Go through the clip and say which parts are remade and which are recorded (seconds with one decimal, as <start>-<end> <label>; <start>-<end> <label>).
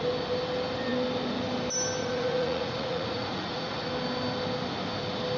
0.0-2.0 recorded; 2.0-3.9 remade; 3.9-5.4 recorded